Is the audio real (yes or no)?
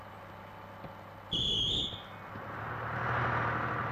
yes